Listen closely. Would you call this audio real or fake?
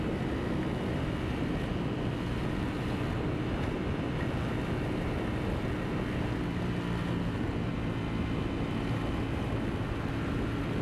real